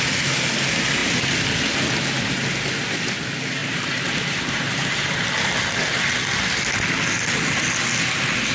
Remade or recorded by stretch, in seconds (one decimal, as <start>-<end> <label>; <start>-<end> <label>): 0.0-3.6 recorded; 3.6-5.3 remade; 5.3-8.5 recorded